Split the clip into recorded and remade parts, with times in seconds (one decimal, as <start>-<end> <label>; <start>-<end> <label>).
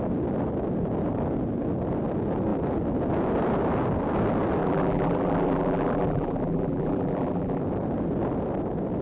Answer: 0.0-4.6 recorded; 4.6-7.6 remade; 7.6-9.0 recorded